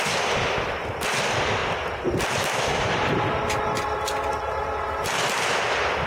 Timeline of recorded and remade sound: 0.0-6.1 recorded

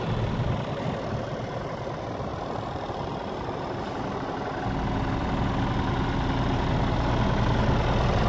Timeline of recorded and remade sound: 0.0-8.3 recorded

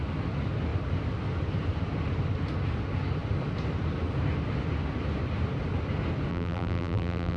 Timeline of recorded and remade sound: 0.0-6.3 recorded; 6.3-7.4 remade